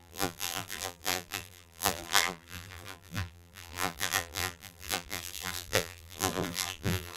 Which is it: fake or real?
fake